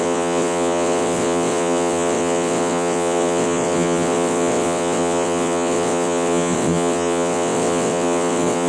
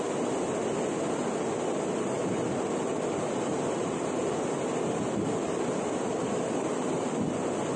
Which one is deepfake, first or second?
first